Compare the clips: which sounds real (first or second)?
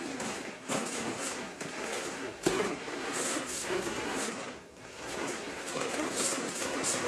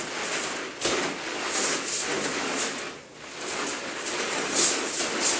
second